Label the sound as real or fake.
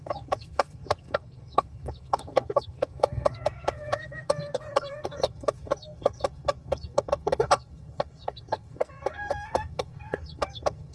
fake